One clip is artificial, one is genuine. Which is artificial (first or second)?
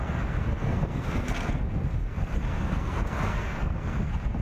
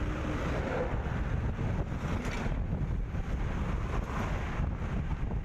first